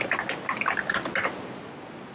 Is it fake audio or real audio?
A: real